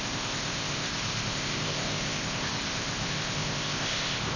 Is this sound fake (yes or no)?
yes